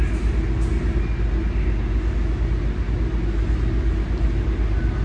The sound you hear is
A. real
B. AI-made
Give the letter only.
A